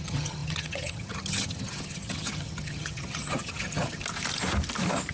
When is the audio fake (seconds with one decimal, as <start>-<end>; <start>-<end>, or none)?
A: 0.0-4.0